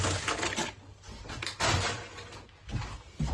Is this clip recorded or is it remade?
recorded